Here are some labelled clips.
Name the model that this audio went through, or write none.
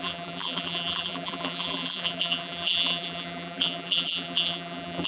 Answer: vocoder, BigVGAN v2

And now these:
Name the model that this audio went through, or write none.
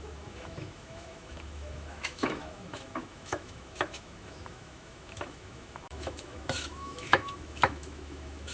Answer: autoencoder, DAC-VAE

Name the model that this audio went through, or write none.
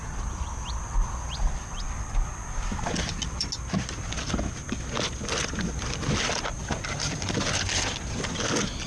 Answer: none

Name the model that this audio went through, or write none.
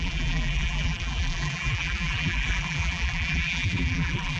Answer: vocoder, BigVGAN v2